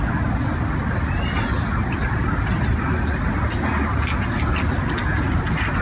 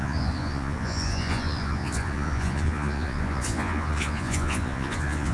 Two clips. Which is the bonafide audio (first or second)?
first